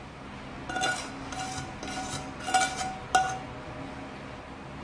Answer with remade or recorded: recorded